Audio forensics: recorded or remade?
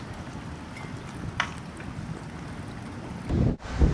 recorded